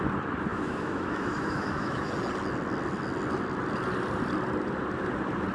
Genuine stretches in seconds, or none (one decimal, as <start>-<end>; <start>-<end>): 0.0-0.5; 2.1-5.5